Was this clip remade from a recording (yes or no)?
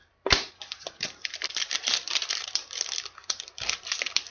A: yes